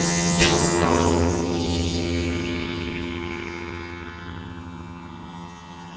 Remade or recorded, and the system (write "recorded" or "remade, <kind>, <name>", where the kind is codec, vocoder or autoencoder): remade, vocoder, HiFi-GAN